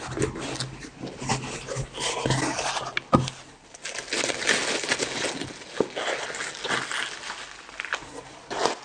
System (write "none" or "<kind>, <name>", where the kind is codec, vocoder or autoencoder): none